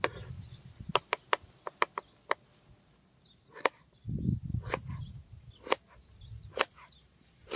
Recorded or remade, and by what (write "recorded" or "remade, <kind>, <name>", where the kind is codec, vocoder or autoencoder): recorded